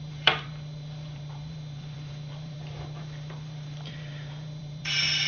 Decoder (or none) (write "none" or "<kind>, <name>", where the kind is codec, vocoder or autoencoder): vocoder, BigVGAN v2